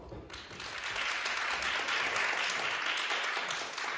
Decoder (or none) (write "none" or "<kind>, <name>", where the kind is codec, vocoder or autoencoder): none